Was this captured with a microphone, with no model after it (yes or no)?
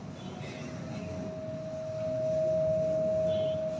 yes